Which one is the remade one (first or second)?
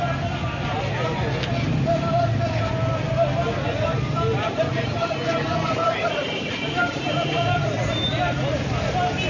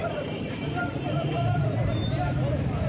second